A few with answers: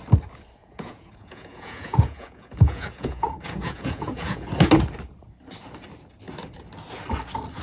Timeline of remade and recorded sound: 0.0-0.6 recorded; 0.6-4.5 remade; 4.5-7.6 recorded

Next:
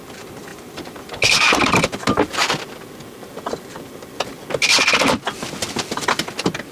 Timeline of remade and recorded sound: 0.0-6.7 recorded

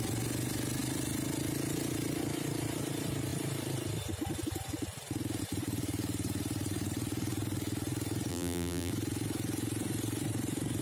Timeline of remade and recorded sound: 0.0-8.3 recorded; 8.3-8.9 remade; 8.9-10.8 recorded

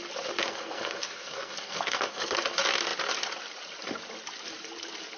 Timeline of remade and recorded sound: 0.0-0.4 recorded; 0.4-2.4 remade; 2.4-5.2 recorded